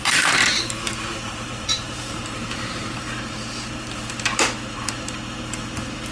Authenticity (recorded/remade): remade